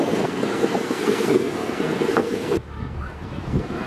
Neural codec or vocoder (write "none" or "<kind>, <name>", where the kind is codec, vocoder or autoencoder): codec, SNAC